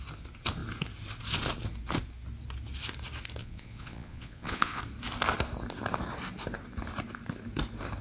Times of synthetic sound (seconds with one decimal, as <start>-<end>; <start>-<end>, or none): 3.4-4.8